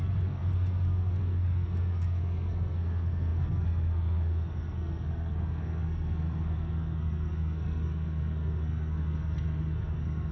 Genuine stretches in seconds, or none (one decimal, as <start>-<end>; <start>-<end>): none